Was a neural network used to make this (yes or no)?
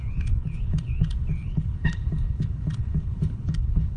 yes